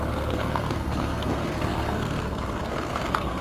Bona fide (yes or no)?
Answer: no